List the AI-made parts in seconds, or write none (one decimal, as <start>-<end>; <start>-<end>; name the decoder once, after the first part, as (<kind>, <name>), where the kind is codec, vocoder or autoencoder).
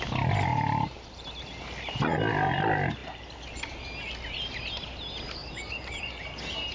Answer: 0.5-1.2 (vocoder, BigVGAN v2); 5.4-6.0